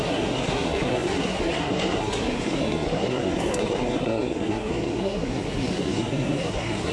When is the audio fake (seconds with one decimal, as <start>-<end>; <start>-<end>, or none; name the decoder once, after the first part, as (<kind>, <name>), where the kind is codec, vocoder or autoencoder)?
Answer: 0.0-6.9 (codec, SNAC)